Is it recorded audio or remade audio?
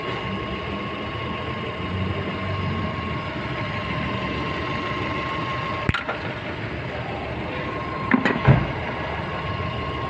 recorded